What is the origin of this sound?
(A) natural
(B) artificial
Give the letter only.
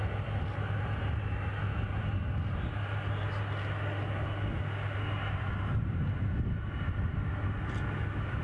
A